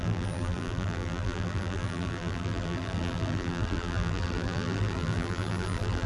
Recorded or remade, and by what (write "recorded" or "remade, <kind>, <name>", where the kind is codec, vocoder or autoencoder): remade, vocoder, BigVGAN v2